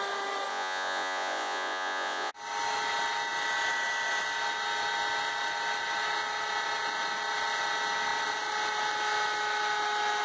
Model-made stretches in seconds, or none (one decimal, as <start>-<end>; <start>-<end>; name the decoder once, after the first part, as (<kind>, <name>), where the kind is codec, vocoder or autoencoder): 0.5-2.3 (vocoder, Vocos)